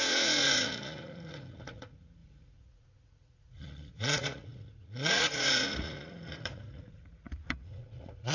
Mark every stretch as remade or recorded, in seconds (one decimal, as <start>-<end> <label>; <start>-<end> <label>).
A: 0.0-8.3 remade